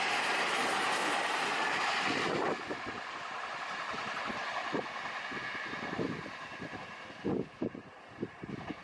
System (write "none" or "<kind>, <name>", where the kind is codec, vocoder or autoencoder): none